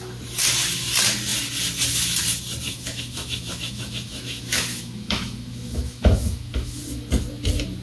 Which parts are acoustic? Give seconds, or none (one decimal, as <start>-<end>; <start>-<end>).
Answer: 0.0-2.7; 6.8-7.8